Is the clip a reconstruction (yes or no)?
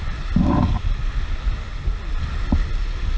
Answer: no